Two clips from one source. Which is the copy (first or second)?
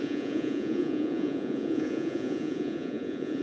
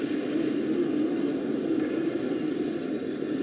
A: first